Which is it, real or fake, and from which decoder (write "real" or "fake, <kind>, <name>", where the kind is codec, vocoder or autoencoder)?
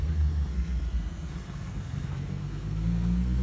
fake, codec, SNAC